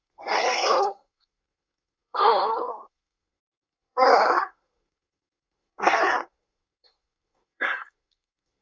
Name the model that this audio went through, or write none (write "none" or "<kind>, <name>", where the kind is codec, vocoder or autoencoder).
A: codec, SNAC